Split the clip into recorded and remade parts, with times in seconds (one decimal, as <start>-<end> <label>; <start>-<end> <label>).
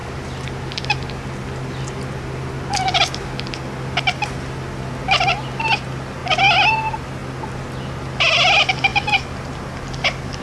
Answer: 0.0-10.4 recorded